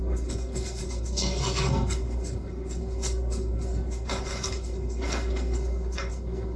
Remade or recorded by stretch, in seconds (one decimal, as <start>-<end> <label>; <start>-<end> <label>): 0.0-6.6 remade